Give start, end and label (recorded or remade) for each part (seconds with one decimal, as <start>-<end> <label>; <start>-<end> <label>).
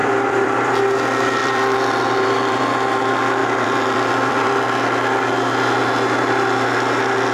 0.0-0.8 remade; 0.8-1.4 recorded; 1.4-2.6 remade; 2.6-3.4 recorded; 3.4-4.6 remade; 4.6-7.3 recorded